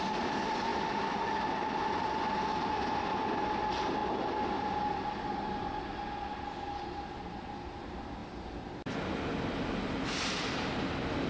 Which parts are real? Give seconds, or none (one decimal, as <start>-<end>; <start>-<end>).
0.0-11.3

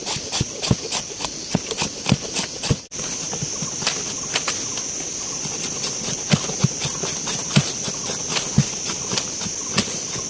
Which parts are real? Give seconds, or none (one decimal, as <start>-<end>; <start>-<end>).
0.0-10.3

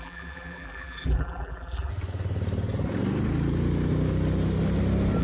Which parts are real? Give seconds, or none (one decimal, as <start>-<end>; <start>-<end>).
1.9-5.2

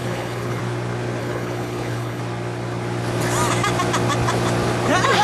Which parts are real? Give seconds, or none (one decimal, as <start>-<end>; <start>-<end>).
0.6-1.2; 2.2-5.2

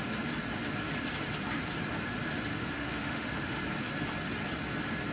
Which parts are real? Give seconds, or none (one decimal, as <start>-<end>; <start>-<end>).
0.0-2.5; 3.6-5.1